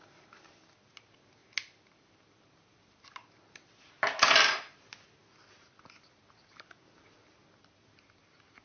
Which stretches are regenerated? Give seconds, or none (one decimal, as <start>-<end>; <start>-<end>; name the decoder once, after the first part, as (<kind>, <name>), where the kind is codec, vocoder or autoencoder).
none